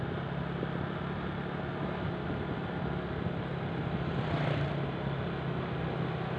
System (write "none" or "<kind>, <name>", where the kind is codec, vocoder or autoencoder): none